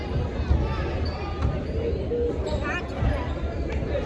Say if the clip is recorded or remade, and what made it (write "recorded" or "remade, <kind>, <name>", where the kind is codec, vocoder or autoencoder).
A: recorded